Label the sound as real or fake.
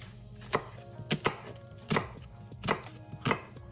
real